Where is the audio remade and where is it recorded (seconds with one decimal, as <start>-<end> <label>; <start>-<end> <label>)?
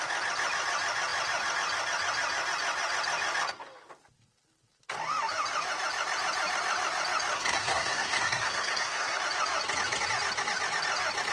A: 0.0-7.3 recorded; 7.3-9.2 remade; 9.2-11.3 recorded